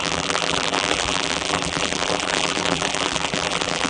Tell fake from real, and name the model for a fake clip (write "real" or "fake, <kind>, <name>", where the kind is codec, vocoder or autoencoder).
fake, vocoder, BigVGAN v2